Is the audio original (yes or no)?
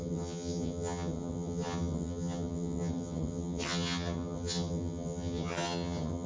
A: no